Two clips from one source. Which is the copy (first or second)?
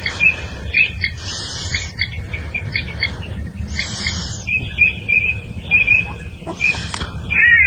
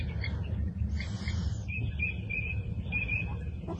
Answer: first